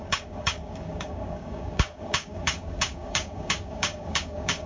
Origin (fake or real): fake